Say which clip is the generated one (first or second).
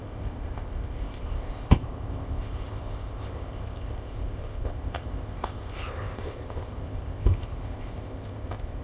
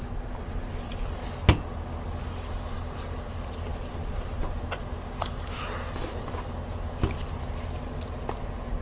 first